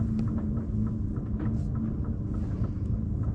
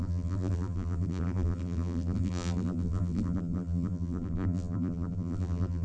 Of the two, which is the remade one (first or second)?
second